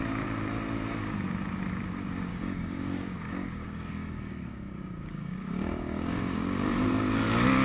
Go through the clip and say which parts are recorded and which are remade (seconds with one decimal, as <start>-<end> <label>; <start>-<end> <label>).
0.0-2.3 recorded; 2.3-6.9 remade; 6.9-7.6 recorded